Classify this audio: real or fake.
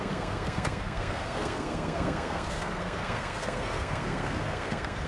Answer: fake